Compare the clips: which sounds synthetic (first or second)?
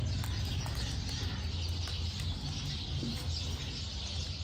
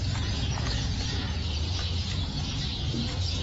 second